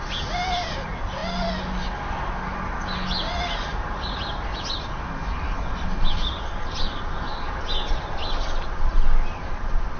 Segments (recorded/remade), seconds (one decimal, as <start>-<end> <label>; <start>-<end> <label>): 0.0-10.0 recorded